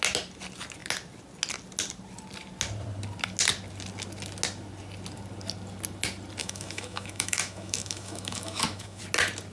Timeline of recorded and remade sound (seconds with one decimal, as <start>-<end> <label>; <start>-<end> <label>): 0.0-6.4 recorded; 6.4-9.0 remade; 9.0-9.5 recorded